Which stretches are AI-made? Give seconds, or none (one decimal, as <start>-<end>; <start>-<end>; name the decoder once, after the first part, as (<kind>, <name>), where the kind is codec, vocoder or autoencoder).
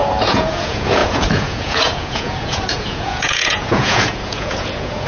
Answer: 0.0-5.1 (vocoder, Vocos)